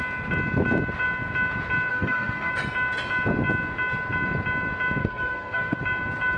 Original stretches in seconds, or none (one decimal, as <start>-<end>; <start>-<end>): 0.0-1.9; 2.5-5.0; 5.8-6.4